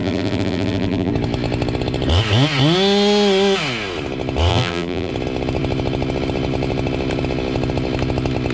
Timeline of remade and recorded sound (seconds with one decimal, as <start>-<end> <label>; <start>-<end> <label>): 0.0-1.1 remade; 1.1-4.5 recorded; 4.5-5.1 remade; 5.1-8.5 recorded